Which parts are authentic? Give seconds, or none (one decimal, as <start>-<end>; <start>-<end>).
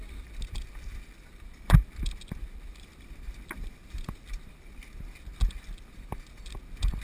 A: 6.1-7.0